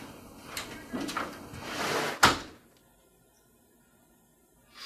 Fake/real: real